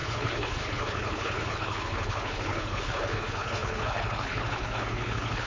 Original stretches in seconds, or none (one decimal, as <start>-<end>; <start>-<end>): none